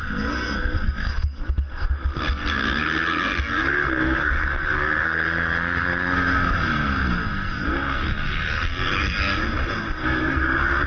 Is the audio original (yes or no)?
no